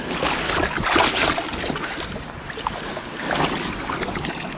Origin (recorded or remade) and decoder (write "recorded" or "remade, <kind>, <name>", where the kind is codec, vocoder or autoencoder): recorded